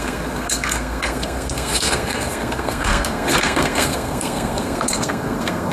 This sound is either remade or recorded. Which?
remade